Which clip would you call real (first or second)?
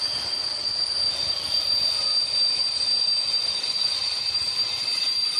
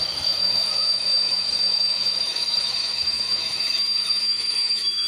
first